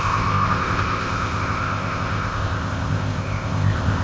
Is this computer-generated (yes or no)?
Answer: yes